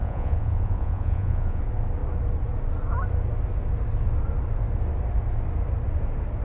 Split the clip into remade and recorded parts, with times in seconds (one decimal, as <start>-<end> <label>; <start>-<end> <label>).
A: 0.0-1.6 remade; 1.6-6.4 recorded